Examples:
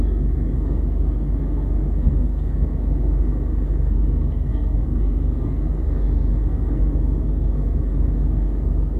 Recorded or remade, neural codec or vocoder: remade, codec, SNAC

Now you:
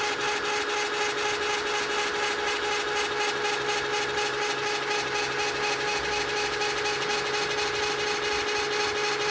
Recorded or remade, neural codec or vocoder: recorded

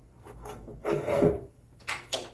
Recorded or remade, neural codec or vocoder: remade, codec, SNAC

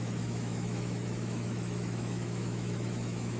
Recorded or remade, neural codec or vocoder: remade, autoencoder, DAC-VAE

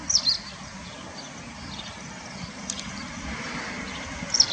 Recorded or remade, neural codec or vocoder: recorded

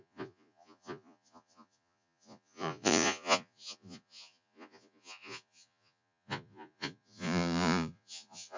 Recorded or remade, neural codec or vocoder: remade, vocoder, Vocos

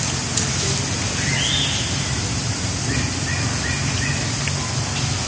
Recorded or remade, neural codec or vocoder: recorded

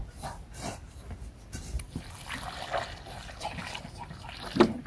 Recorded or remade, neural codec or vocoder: recorded